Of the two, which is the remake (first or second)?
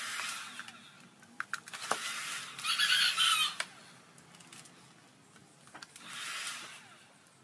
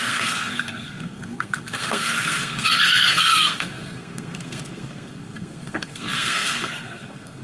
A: second